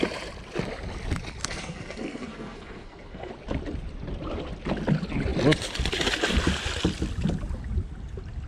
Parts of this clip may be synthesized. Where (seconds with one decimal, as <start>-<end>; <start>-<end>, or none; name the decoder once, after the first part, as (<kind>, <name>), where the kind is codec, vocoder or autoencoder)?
1.4-3.3 (codec, SNAC)